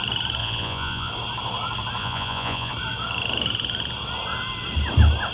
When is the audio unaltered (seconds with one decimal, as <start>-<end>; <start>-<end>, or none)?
0.0-0.4; 1.1-2.0; 2.7-5.3